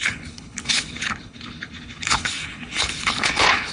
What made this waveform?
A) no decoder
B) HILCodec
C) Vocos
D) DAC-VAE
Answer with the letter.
B